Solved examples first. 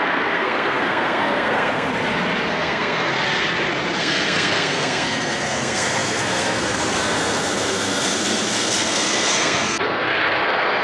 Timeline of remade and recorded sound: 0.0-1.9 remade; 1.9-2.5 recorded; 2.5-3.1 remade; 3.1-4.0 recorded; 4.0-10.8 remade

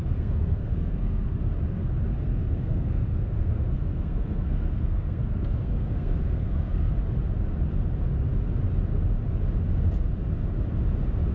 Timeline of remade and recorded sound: 0.0-1.4 remade; 1.4-2.1 recorded; 2.1-6.9 remade; 6.9-11.3 recorded

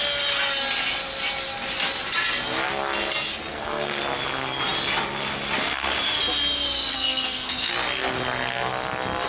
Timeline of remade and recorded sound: 0.0-3.5 recorded; 3.5-4.0 remade; 4.0-6.9 recorded; 6.9-7.7 remade; 7.7-9.3 recorded

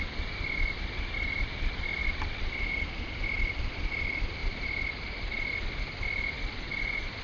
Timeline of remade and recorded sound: 0.0-7.2 recorded

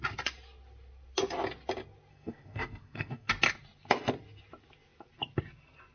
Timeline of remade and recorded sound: 0.0-2.1 recorded; 2.1-3.3 remade; 3.3-5.9 recorded